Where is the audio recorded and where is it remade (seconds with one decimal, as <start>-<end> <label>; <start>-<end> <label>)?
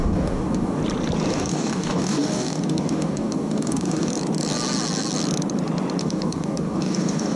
0.0-0.8 remade; 0.8-1.3 recorded; 1.3-4.1 remade; 4.1-6.0 recorded; 6.0-7.4 remade